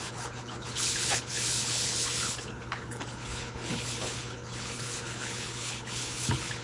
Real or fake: fake